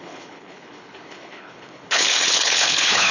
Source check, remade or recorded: remade